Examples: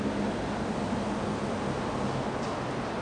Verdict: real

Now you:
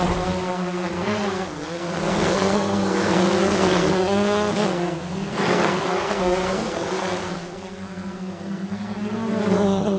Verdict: fake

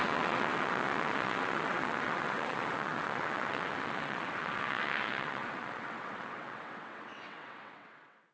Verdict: fake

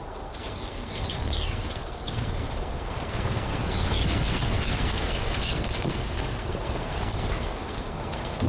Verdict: fake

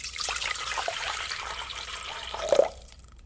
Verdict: fake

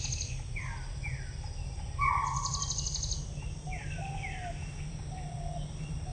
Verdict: real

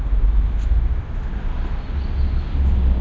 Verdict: real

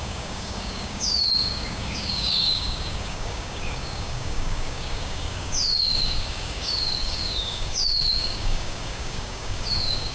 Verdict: fake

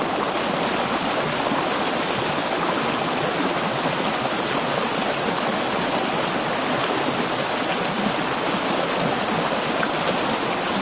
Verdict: real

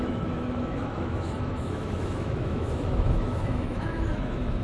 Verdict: fake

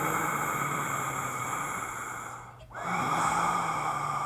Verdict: real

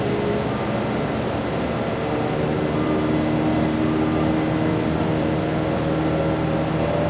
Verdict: real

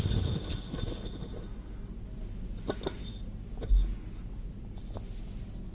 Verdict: real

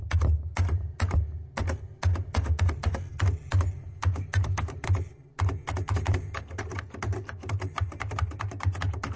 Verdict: real